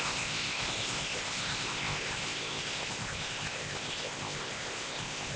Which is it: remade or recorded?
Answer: remade